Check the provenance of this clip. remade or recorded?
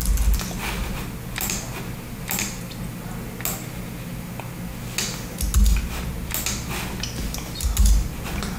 recorded